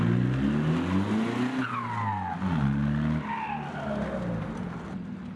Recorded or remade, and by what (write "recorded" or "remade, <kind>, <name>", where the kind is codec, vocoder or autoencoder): recorded